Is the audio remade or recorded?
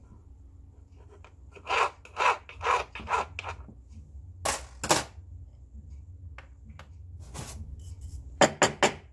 recorded